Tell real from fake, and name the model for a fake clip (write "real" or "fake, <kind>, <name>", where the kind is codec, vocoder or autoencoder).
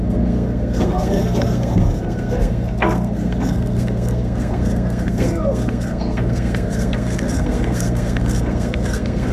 fake, codec, SNAC